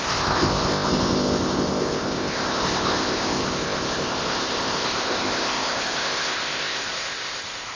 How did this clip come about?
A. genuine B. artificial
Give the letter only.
B